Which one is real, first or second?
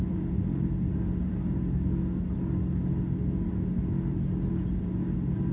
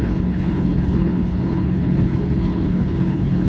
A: first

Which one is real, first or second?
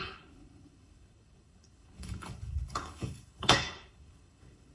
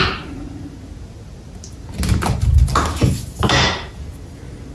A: second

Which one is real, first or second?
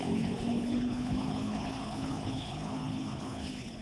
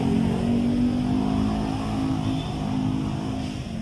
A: second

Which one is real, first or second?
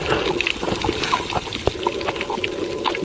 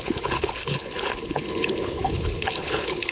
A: first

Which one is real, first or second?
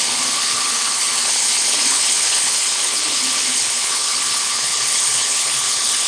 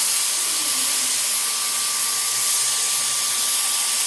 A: second